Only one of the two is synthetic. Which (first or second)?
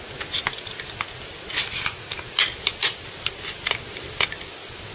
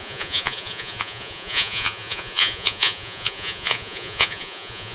second